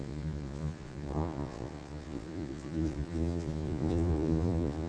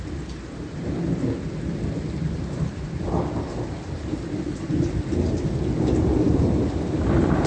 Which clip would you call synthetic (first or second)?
first